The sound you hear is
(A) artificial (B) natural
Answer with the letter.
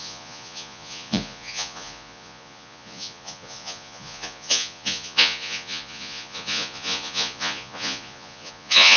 A